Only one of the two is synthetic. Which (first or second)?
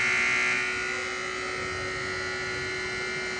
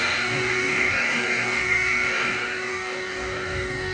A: second